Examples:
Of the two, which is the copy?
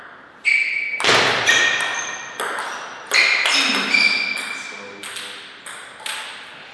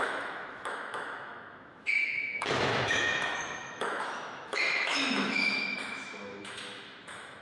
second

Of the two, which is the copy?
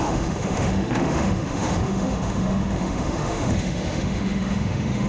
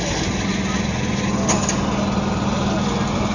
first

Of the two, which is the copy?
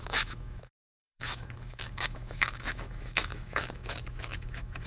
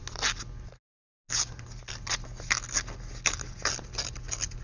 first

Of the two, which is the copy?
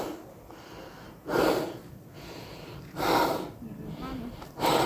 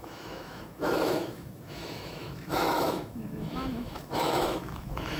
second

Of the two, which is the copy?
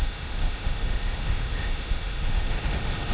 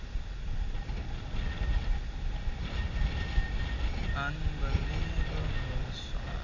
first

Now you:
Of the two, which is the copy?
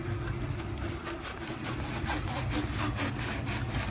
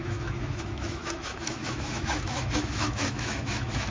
second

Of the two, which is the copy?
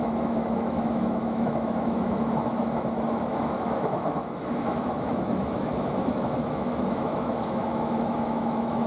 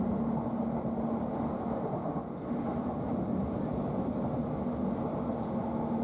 first